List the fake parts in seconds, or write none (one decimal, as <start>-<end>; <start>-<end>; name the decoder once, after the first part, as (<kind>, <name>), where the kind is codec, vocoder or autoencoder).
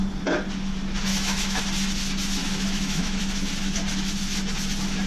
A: 1.1-1.6 (autoencoder, DAC-VAE); 2.4-3.2